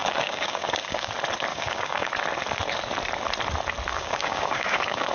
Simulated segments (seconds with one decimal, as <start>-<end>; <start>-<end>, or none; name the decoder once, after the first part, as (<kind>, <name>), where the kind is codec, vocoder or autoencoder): 0.0-1.1 (codec, DAC); 1.5-2.1; 3.9-5.1